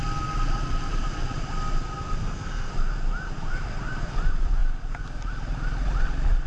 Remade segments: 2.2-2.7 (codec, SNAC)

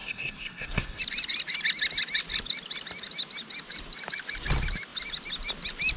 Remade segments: 0.0-1.0 (codec, SNAC)

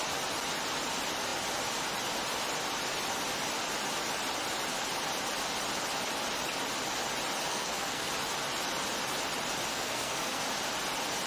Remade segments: 7.5-8.1 (codec, SNAC); 9.7-10.4

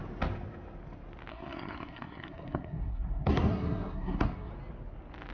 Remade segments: 1.3-4.5 (codec, SNAC)